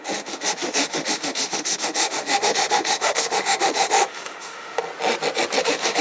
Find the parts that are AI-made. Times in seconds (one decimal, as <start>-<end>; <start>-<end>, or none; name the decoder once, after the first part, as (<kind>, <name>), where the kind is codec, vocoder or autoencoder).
0.0-4.9 (autoencoder, DAC-VAE); 5.6-6.0